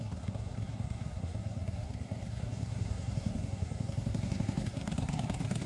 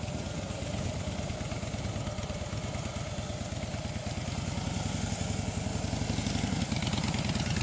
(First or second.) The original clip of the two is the second